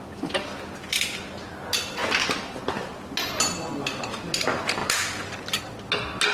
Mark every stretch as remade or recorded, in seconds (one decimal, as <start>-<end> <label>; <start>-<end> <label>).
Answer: 0.0-2.0 recorded; 2.0-3.1 remade; 3.1-6.3 recorded